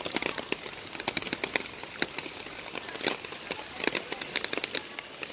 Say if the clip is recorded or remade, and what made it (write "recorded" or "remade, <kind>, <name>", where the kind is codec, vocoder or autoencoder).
recorded